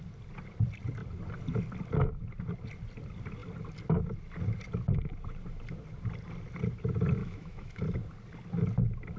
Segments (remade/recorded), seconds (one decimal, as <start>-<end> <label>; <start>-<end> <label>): 0.0-7.2 recorded; 7.2-7.8 remade; 7.8-9.2 recorded